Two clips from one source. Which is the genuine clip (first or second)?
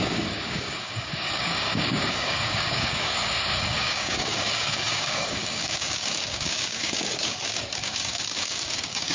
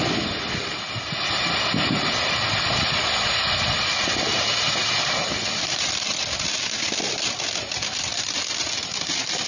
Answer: second